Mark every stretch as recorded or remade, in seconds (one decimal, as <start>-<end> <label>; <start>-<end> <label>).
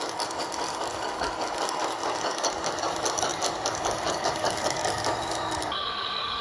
0.0-6.4 remade